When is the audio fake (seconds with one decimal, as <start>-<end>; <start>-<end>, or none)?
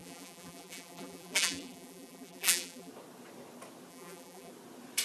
0.0-2.9; 3.9-4.5